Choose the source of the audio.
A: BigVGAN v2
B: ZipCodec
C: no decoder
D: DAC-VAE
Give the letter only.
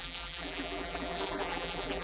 A